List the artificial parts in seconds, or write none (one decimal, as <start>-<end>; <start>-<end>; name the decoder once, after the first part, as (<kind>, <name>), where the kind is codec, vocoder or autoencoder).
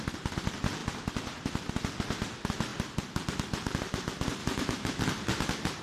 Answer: 4.4-5.0 (autoencoder, DAC-VAE)